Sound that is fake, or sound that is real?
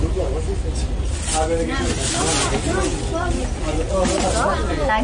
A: real